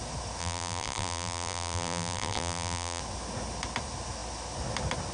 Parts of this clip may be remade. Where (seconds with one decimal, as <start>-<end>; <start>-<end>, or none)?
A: 0.4-3.0